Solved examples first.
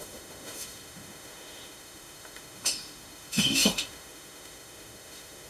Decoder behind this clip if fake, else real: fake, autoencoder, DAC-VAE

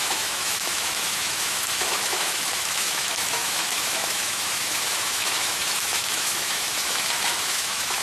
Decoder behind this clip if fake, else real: fake, autoencoder, DAC-VAE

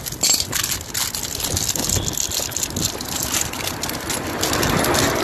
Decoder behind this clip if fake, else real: real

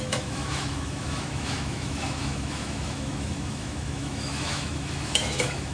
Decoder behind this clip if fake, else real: fake, autoencoder, DAC-VAE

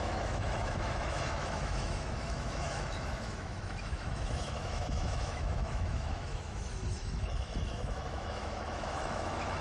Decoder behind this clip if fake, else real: fake, autoencoder, DAC-VAE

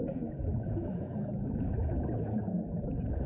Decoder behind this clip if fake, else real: fake, autoencoder, DAC-VAE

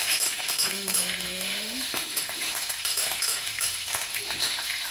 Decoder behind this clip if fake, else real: fake, autoencoder, DAC-VAE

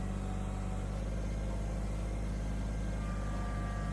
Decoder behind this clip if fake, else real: real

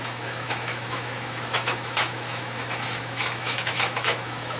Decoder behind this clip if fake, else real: fake, autoencoder, DAC-VAE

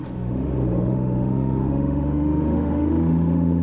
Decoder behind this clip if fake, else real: fake, autoencoder, DAC-VAE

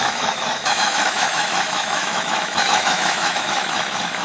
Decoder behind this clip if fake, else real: fake, autoencoder, DAC-VAE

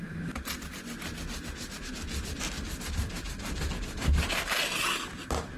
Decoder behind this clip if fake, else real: real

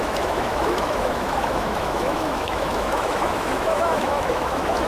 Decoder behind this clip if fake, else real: fake, autoencoder, DAC-VAE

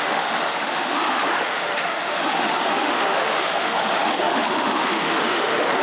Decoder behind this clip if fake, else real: fake, autoencoder, DAC-VAE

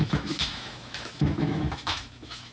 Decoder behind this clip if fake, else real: fake, autoencoder, DAC-VAE